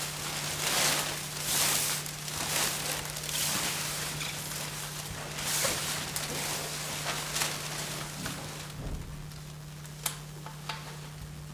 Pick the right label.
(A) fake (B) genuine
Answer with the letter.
B